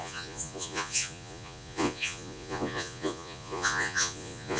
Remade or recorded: remade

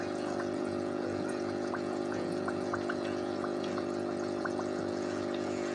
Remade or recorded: remade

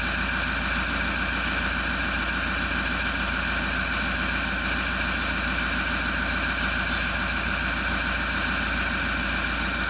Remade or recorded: recorded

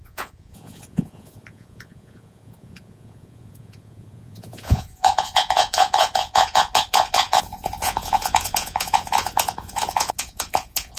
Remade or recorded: remade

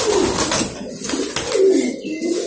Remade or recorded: recorded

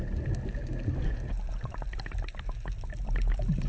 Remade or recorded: recorded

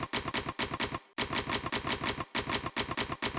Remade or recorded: recorded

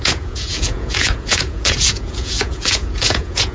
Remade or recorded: remade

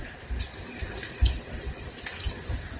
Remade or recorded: recorded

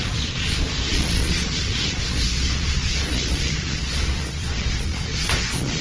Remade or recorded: remade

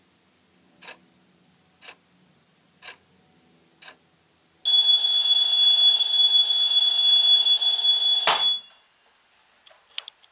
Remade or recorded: recorded